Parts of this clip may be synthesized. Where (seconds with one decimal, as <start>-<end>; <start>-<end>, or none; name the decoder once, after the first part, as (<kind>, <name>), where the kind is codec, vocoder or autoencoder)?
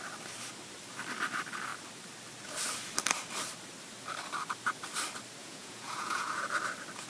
5.4-6.3 (vocoder, Vocos)